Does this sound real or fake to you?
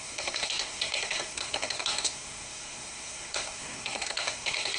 fake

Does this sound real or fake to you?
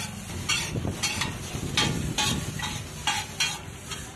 real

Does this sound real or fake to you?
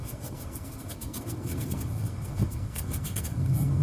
fake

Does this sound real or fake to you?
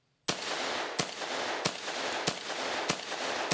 real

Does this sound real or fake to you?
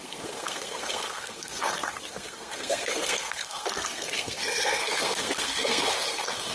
fake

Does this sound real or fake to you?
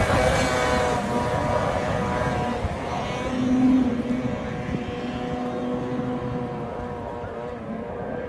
real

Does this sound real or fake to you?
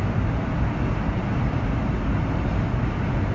real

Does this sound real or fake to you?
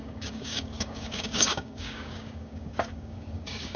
fake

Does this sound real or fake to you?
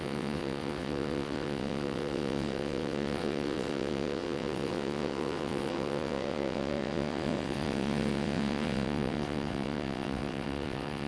fake